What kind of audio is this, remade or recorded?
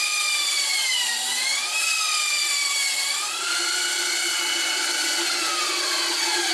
recorded